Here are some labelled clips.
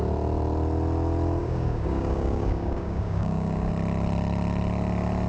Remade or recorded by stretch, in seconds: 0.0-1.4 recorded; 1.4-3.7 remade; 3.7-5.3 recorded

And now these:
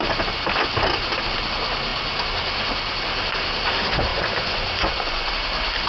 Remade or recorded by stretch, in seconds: 0.0-4.1 recorded; 4.1-5.3 remade; 5.3-5.9 recorded